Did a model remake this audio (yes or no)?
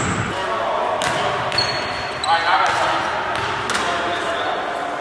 no